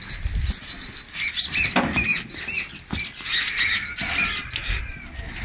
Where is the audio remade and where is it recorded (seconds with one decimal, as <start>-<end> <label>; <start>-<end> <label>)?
0.0-5.4 recorded